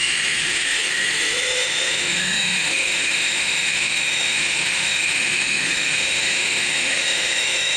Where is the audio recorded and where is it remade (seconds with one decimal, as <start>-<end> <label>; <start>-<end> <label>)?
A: 0.0-7.8 remade